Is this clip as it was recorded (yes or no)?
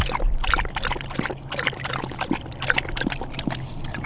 yes